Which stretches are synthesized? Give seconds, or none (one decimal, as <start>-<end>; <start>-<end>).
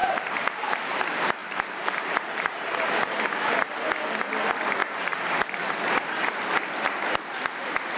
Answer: 0.0-0.7; 1.4-3.9; 4.8-5.9